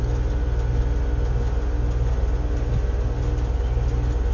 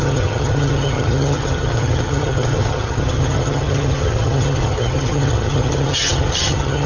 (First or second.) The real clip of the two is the first